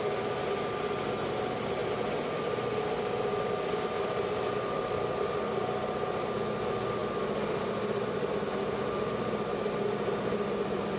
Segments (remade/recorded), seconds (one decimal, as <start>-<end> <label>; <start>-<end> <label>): 0.0-11.0 recorded